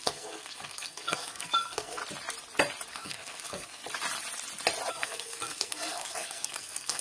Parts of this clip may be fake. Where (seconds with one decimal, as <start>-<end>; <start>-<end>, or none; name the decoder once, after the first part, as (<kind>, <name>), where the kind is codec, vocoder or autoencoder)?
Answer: 0.0-2.0 (codec, SNAC); 2.9-3.8; 4.9-7.0